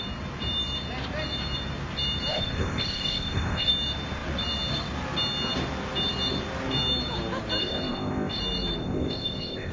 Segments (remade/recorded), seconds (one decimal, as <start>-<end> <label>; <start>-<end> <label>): 0.0-2.3 recorded; 2.3-3.7 remade; 3.7-7.6 recorded; 7.6-8.4 remade; 8.4-8.8 recorded; 8.8-9.7 remade